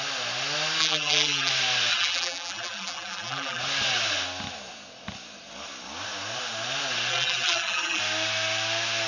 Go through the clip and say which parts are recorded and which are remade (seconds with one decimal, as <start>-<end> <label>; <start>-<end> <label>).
0.0-0.8 recorded; 0.8-1.5 remade; 1.5-1.9 recorded; 1.9-3.6 remade; 3.6-7.1 recorded; 7.1-8.0 remade; 8.0-9.1 recorded